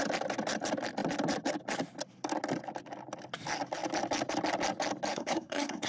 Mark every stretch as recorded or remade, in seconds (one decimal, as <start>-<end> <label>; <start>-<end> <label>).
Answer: 0.0-5.1 recorded; 5.1-5.9 remade